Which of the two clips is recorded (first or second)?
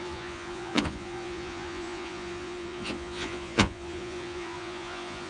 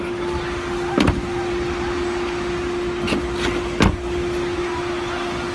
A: second